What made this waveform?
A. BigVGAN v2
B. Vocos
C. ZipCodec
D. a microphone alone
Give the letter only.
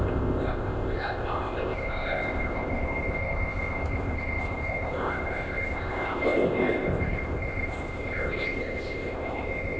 C